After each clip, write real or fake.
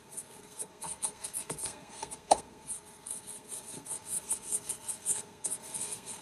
fake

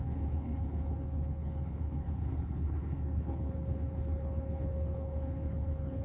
fake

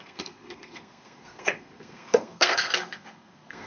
fake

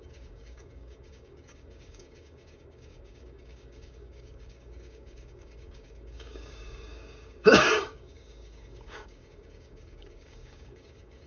fake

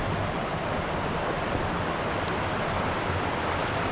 real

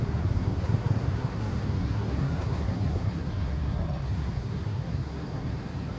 fake